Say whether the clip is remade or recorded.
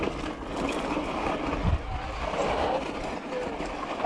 recorded